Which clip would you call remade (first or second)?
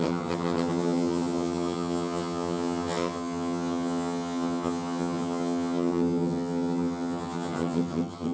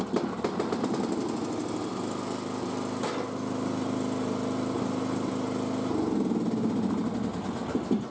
first